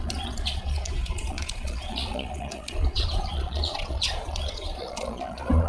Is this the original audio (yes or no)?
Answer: no